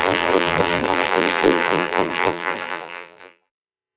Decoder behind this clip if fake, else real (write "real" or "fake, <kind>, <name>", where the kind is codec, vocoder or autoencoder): fake, vocoder, BigVGAN v2